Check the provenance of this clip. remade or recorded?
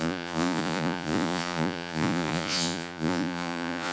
remade